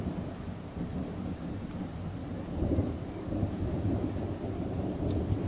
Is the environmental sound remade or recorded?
recorded